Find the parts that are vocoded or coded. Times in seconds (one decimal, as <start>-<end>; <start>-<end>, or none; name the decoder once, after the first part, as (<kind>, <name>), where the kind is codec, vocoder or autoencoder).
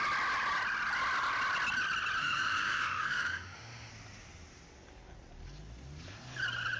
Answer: 2.2-3.9 (autoencoder, DAC-VAE)